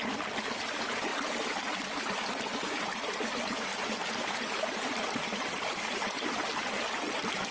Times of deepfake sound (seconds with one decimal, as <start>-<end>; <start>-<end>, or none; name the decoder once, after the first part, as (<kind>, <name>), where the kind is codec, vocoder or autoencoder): none